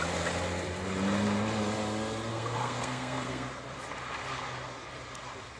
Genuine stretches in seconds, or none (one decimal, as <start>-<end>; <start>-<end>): 0.0-2.3; 3.5-5.6